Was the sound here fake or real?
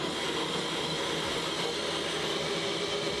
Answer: real